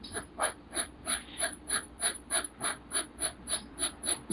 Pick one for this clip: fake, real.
fake